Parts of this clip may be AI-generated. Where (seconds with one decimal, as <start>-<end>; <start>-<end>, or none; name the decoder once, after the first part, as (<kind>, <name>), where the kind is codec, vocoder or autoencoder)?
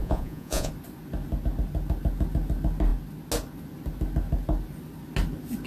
0.0-0.7 (vocoder, Vocos)